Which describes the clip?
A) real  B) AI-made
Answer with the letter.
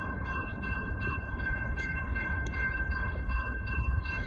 B